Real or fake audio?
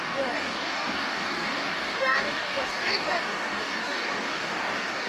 fake